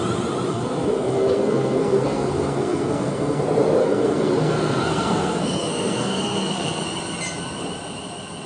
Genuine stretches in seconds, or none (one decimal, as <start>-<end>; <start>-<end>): 0.0-0.5; 3.4-3.8; 6.8-8.5